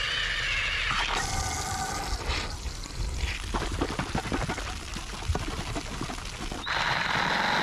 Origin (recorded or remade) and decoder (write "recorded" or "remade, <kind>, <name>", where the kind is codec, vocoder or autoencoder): recorded